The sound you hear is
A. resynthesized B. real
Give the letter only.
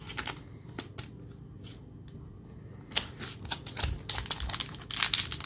B